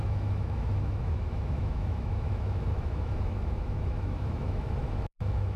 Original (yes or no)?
no